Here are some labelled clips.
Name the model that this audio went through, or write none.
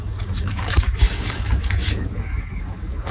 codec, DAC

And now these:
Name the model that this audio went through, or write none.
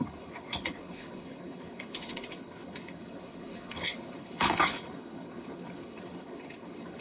codec, HILCodec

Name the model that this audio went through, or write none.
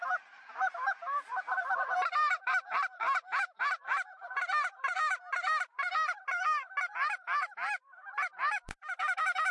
vocoder, BigVGAN v2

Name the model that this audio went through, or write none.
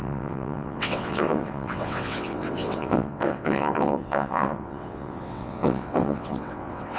vocoder, WaveNeXt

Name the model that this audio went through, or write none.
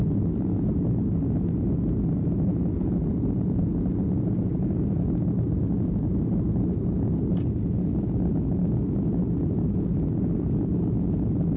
none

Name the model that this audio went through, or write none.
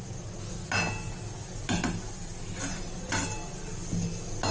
none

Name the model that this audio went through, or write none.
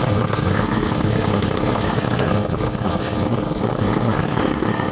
codec, SNAC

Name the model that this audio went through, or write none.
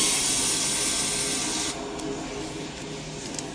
none